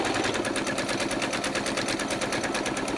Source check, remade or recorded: recorded